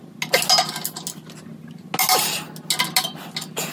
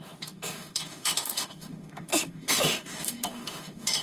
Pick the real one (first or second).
first